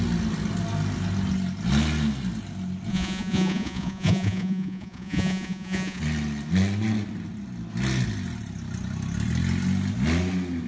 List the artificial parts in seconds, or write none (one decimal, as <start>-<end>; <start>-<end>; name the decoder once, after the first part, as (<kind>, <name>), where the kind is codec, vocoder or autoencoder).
2.9-6.0 (vocoder, Vocos)